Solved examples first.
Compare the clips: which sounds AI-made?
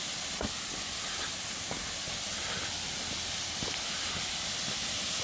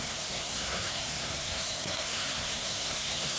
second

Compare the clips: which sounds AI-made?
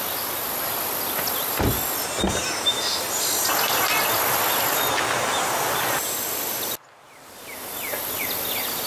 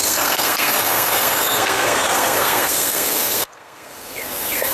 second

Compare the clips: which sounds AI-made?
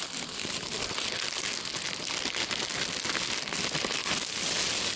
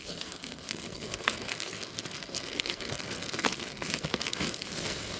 second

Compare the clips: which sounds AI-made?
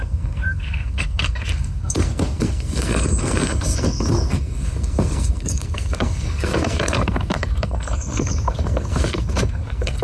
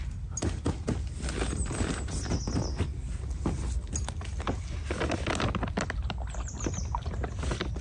first